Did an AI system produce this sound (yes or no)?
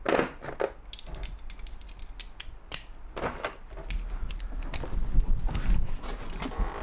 no